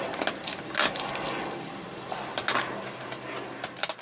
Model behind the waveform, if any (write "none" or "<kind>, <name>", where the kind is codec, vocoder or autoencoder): none